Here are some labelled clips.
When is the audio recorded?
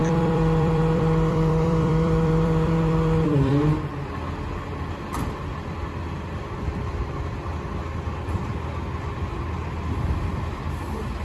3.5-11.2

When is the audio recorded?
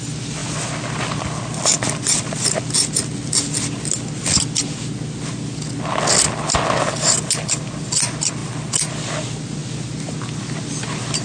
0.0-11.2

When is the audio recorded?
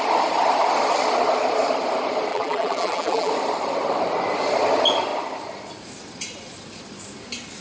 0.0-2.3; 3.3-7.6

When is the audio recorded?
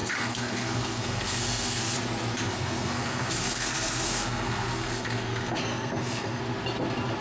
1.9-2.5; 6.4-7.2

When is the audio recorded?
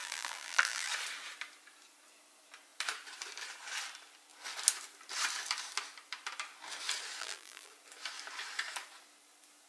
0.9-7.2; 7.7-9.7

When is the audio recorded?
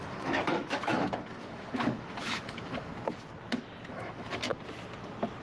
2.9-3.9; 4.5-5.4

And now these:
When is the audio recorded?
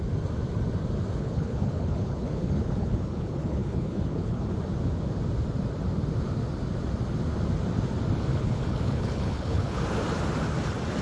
0.0-1.2; 4.6-8.3; 9.8-11.0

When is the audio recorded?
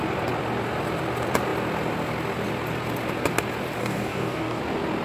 0.0-3.8; 4.6-5.0